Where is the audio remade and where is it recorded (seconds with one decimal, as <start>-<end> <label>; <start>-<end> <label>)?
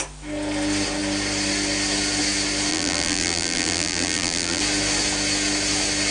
0.0-2.7 recorded; 2.7-4.6 remade; 4.6-6.1 recorded